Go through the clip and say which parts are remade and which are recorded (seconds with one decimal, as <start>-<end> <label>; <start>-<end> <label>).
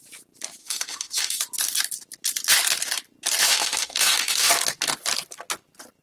0.0-0.6 recorded; 0.6-1.4 remade; 1.4-3.4 recorded; 3.4-4.5 remade; 4.5-6.0 recorded